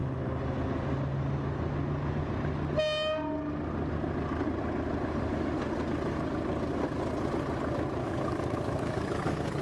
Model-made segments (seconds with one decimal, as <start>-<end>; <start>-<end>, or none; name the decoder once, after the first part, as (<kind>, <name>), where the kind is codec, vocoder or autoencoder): 8.0-9.6 (codec, DAC)